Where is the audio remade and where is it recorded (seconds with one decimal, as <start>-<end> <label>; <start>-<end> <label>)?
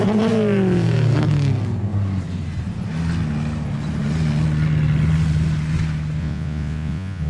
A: 0.0-6.2 recorded; 6.2-7.3 remade